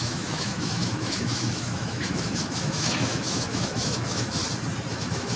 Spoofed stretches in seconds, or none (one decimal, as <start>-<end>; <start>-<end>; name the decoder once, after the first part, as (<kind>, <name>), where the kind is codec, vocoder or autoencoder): 0.0-4.4 (autoencoder, DAC-VAE); 4.9-5.4